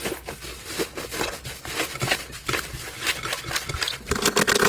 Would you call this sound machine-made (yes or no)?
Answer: no